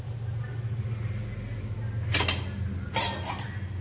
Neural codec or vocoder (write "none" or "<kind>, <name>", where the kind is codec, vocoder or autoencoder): none